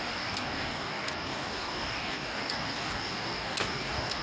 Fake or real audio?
fake